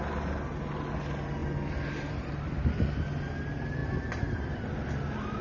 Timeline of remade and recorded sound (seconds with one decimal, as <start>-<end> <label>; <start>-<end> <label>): 0.0-5.4 recorded